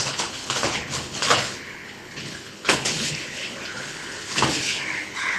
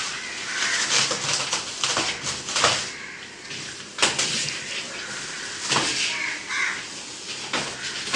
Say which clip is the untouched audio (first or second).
second